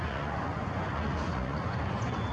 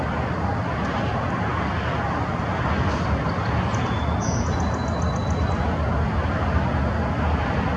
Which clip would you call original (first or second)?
second